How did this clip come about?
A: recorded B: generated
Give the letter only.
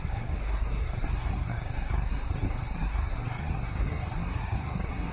B